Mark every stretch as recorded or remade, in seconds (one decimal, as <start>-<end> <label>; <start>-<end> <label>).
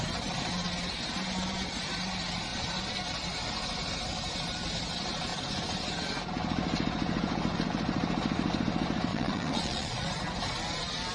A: 0.0-9.1 recorded; 9.1-10.1 remade; 10.1-11.1 recorded